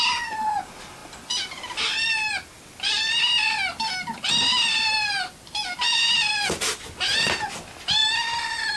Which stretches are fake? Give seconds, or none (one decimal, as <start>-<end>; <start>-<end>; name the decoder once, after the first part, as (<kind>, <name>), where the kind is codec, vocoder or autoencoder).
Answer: none